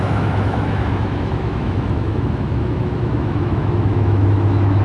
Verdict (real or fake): fake